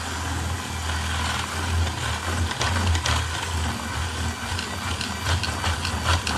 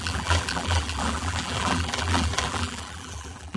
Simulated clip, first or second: second